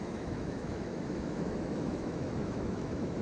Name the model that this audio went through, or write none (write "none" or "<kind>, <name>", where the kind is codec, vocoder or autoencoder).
autoencoder, DAC-VAE